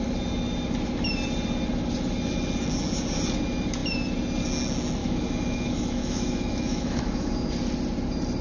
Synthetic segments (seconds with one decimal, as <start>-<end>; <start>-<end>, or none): 5.0-7.5